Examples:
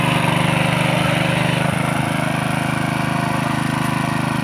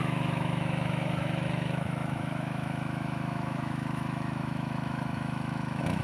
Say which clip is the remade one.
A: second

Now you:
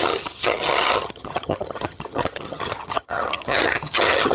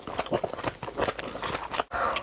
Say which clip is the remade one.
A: first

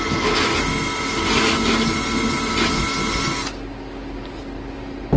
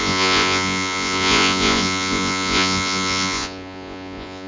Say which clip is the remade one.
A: second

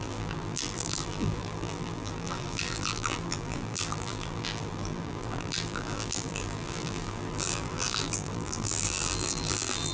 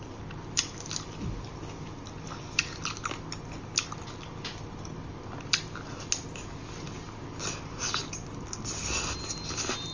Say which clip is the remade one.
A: first